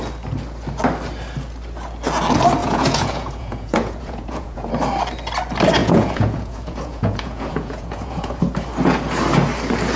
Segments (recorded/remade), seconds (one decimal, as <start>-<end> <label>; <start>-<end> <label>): 0.0-2.6 recorded; 2.6-4.7 remade; 4.7-5.8 recorded; 5.8-8.4 remade; 8.4-10.0 recorded